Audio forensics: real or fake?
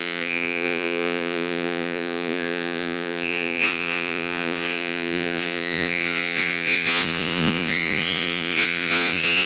fake